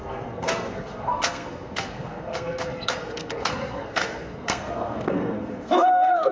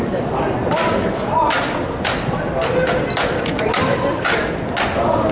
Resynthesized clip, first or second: first